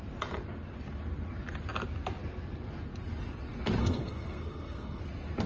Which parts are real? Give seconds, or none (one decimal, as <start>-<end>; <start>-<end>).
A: 0.0-3.8; 5.0-5.5